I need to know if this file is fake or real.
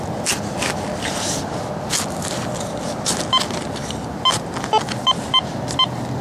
real